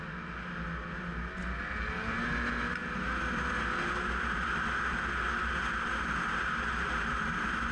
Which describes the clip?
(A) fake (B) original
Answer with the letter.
B